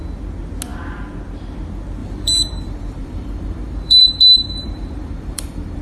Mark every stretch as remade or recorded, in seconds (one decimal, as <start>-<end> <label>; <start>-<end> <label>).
0.0-2.0 recorded; 2.0-5.8 remade